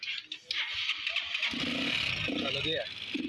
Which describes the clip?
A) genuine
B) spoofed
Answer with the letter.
A